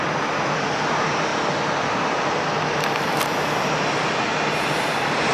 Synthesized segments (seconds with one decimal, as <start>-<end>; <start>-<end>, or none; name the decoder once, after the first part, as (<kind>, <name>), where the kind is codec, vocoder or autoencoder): none

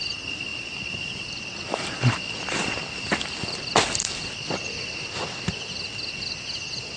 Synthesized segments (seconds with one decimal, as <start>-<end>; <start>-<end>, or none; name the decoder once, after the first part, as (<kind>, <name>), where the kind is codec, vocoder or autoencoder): none

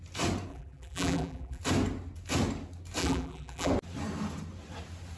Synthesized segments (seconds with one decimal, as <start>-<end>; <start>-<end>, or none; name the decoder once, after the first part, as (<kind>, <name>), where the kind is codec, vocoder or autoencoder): 0.5-1.6 (vocoder, BigVGAN v2); 3.0-3.7

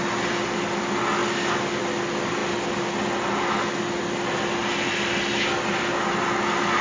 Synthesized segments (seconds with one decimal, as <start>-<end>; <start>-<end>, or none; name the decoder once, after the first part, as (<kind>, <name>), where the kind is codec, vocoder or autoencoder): 1.2-1.8 (vocoder, BigVGAN v2); 4.6-5.7

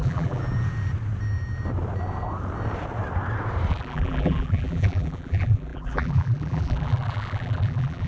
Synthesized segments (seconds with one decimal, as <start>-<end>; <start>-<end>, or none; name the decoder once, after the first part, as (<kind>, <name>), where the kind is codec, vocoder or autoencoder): 0.0-0.4 (vocoder, BigVGAN v2); 3.7-8.1

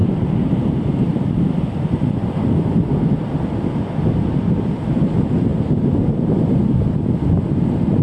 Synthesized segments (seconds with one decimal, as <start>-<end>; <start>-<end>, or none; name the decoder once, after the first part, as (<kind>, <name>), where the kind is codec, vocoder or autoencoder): 0.0-0.5 (vocoder, BigVGAN v2)

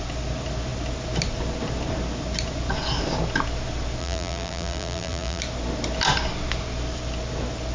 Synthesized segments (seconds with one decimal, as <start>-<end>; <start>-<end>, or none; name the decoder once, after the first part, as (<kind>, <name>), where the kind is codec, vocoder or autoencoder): 4.0-5.4 (vocoder, BigVGAN v2)